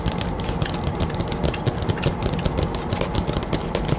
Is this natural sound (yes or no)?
yes